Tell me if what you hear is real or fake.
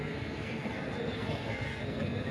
fake